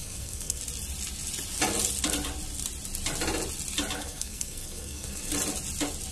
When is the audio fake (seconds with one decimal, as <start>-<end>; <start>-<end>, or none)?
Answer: 0.0-0.6; 4.0-5.3